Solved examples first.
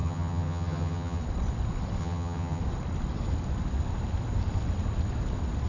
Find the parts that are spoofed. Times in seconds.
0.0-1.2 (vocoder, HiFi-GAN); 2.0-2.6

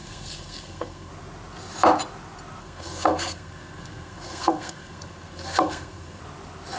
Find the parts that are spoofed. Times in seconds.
0.0-1.1 (codec, SNAC); 2.6-6.2